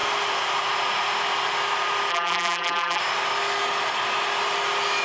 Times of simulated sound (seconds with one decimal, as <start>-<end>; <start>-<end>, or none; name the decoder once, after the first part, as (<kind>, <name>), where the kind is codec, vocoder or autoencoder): 2.1-3.0 (vocoder, BigVGAN v2)